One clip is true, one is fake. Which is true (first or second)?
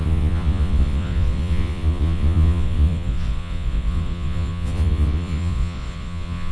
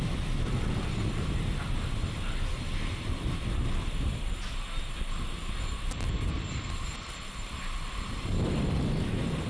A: second